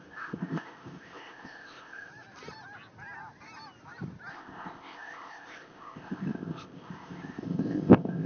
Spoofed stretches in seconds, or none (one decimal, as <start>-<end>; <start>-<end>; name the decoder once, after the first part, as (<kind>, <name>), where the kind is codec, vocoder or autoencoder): 0.0-2.1 (codec, ZipCodec); 4.3-8.3